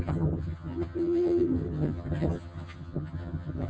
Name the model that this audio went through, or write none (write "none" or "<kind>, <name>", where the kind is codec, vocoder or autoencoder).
vocoder, HiFi-GAN